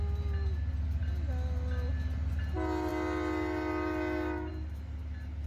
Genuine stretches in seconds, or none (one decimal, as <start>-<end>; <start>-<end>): 0.0-5.5